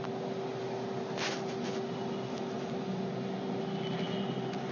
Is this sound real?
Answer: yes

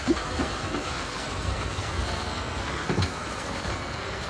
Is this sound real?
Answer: no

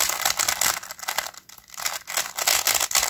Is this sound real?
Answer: yes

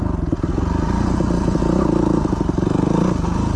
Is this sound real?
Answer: yes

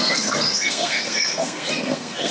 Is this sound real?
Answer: no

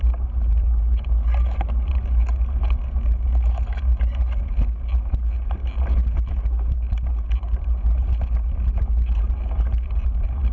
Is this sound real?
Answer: yes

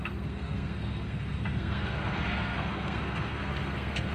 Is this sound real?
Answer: no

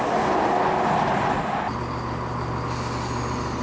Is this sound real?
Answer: yes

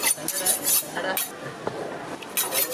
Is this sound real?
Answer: yes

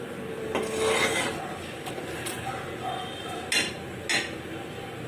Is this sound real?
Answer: yes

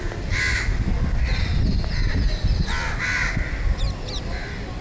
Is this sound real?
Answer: yes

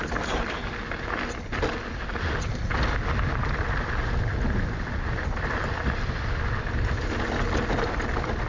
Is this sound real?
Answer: yes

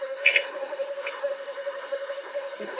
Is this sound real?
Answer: no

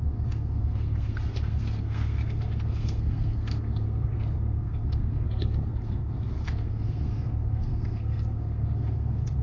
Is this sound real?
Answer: no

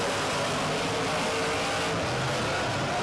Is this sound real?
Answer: yes